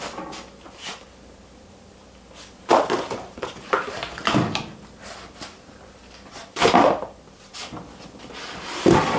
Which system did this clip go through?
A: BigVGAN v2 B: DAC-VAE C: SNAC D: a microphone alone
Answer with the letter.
D